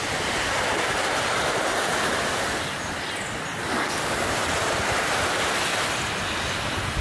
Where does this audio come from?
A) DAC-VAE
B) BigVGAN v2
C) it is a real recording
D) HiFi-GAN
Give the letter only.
C